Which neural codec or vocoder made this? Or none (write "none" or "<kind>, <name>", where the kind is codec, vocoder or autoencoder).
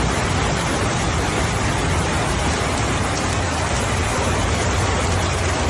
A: vocoder, BigVGAN v2